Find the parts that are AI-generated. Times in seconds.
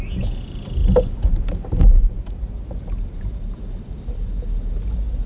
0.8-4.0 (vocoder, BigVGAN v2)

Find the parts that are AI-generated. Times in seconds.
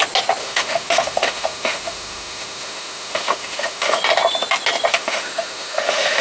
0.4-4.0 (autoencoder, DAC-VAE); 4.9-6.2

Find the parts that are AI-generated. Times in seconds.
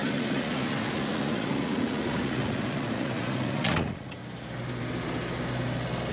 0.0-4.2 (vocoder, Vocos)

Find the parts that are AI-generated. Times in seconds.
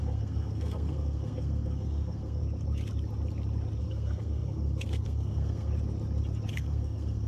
0.0-2.4 (codec, SNAC); 3.8-5.7; 6.5-7.3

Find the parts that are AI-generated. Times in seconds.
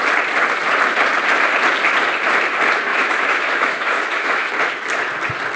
2.9-4.5 (autoencoder, DAC-VAE)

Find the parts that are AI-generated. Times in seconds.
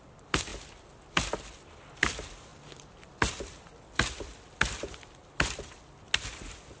none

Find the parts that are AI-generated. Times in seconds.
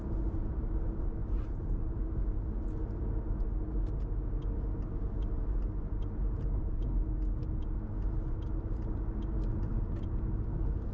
1.2-1.9 (vocoder, BigVGAN v2); 9.5-10.1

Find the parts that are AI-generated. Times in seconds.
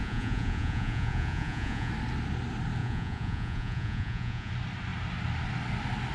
0.0-1.9 (vocoder, Vocos); 2.8-4.5